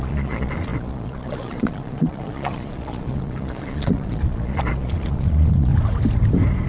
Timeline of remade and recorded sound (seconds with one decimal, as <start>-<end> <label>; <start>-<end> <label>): 0.0-5.7 remade; 5.7-6.7 recorded